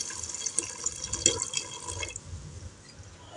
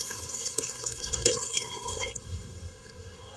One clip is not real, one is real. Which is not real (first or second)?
second